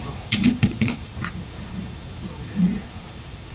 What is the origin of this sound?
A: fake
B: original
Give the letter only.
A